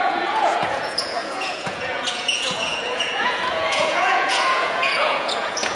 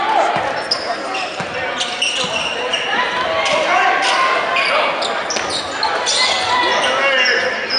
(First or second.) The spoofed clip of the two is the first